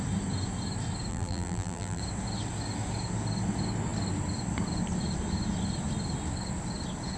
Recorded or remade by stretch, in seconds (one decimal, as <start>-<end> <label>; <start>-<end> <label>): 0.0-1.1 recorded; 1.1-2.0 remade; 2.0-7.2 recorded